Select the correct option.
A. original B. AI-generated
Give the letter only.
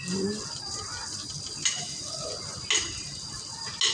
A